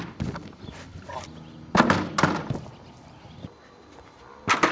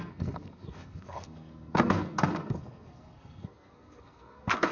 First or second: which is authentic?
first